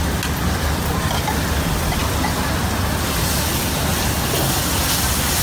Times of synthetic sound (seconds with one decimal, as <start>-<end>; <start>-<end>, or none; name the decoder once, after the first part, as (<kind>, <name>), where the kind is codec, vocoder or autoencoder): none